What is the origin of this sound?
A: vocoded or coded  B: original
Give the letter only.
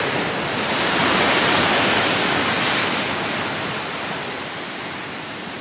A